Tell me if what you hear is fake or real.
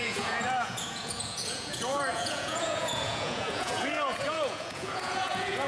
fake